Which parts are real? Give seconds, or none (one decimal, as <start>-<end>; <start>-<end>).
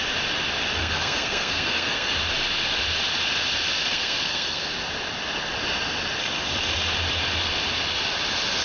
0.0-0.8; 2.1-3.9; 4.7-8.6